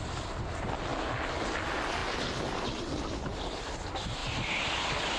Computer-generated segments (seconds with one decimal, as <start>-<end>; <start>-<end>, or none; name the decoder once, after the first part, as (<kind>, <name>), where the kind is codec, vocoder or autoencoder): none